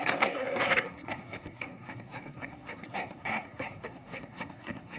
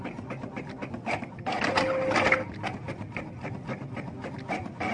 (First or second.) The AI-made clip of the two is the first